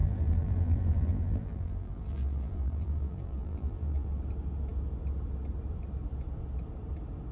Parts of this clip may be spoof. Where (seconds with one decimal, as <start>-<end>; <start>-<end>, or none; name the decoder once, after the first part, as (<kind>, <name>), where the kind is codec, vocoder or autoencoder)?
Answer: 0.0-4.2 (vocoder, BigVGAN v2)